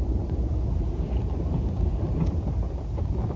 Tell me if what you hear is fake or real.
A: real